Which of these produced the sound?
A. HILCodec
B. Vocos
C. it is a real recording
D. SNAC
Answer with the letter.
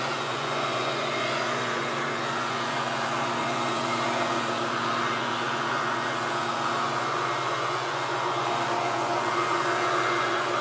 B